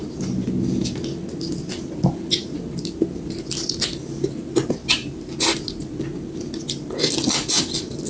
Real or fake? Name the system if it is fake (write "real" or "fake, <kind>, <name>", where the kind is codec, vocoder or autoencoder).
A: real